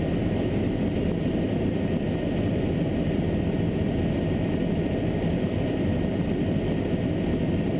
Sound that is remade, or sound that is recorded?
recorded